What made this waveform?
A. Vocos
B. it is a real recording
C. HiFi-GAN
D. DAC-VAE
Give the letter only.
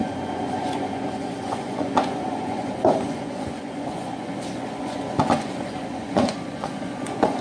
A